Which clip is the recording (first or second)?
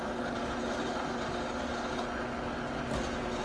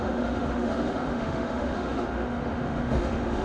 first